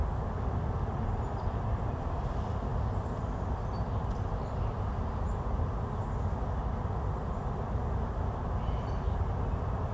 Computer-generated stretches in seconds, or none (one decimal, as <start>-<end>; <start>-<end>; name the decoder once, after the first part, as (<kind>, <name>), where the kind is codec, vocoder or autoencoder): none